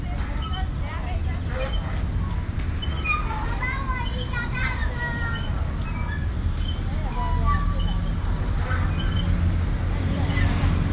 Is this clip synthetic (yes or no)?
no